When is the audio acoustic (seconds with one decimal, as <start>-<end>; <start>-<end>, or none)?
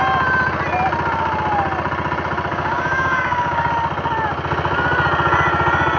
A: 0.0-2.5; 3.7-6.0